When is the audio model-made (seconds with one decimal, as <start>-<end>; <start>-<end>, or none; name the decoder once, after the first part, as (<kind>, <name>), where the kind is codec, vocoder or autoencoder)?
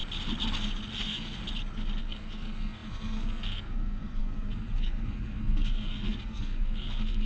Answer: 1.0-1.4 (codec, SNAC); 2.0-7.3